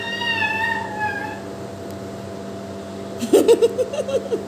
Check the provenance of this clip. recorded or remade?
recorded